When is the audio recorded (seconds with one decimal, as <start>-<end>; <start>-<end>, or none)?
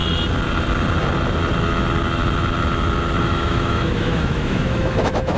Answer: 0.0-3.2